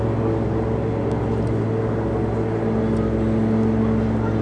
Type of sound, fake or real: real